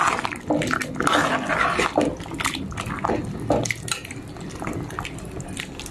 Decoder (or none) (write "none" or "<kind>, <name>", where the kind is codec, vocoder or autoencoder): none